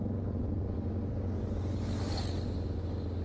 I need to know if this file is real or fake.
real